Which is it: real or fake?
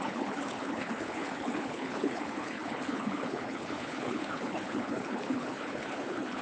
fake